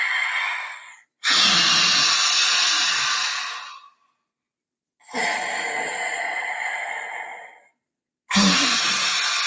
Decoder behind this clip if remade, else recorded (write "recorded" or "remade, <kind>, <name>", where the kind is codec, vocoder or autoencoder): recorded